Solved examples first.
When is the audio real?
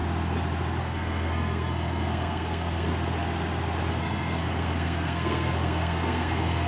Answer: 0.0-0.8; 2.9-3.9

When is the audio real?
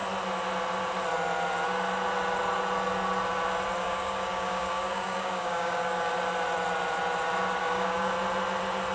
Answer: 0.0-3.8; 6.1-7.6; 8.1-8.9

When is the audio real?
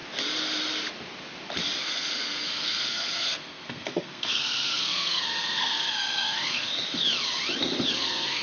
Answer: 0.0-1.8; 6.7-7.9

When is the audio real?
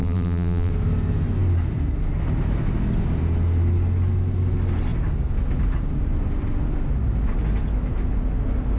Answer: 0.7-8.8